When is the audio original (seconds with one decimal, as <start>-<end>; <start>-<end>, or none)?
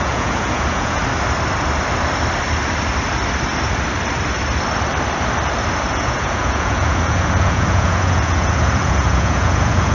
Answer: 1.0-5.9